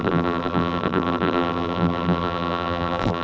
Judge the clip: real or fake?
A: fake